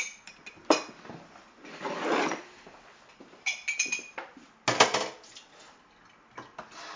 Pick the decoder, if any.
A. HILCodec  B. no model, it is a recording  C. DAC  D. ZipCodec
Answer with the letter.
B